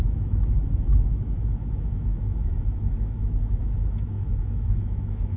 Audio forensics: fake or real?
fake